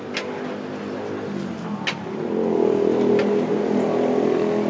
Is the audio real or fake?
real